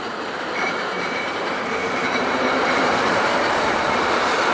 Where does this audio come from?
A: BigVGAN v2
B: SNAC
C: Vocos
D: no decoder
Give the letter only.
A